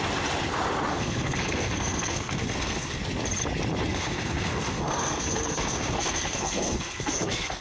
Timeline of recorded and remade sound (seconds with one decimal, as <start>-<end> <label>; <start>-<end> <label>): 0.0-0.9 recorded; 0.9-3.0 remade; 3.0-3.9 recorded; 3.9-7.6 remade